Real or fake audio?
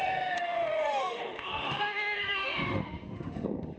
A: fake